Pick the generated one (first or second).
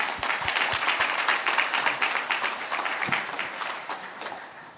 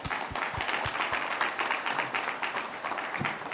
first